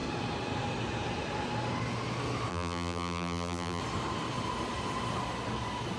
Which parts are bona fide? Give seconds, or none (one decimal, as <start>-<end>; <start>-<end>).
0.0-2.5; 3.8-6.0